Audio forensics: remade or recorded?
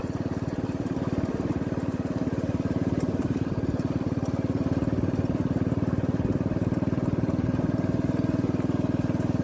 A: recorded